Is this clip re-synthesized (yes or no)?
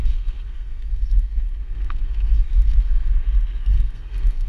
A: yes